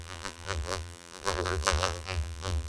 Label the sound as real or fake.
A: fake